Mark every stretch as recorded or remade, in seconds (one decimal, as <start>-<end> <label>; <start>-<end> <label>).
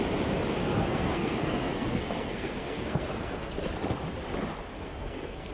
0.0-0.6 recorded; 0.6-3.5 remade; 3.5-4.8 recorded; 4.8-5.5 remade